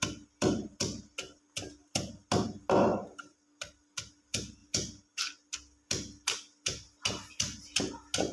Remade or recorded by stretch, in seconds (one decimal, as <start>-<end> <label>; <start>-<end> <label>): 0.0-8.3 recorded

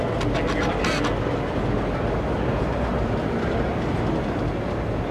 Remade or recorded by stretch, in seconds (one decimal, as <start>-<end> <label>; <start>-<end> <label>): 0.0-5.1 recorded

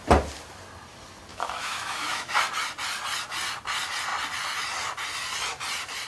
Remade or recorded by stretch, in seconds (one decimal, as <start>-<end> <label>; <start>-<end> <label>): 0.0-1.3 recorded; 1.3-2.4 remade; 2.4-6.1 recorded

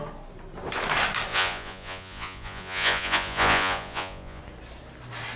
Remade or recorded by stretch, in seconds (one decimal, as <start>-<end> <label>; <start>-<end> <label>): 0.0-1.3 recorded; 1.3-4.4 remade; 4.4-5.4 recorded

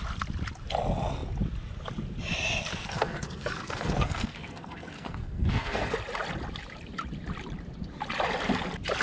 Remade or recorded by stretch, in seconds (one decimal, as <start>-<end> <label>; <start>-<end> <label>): 0.0-2.7 recorded; 2.7-5.9 remade; 5.9-9.0 recorded

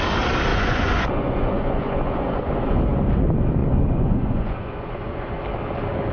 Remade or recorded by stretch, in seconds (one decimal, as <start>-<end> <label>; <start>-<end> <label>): 0.0-0.5 recorded; 0.5-2.5 remade; 2.5-3.6 recorded; 3.6-5.4 remade; 5.4-6.1 recorded

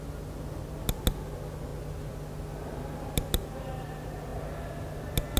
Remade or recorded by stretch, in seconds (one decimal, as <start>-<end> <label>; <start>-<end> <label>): 0.0-5.4 recorded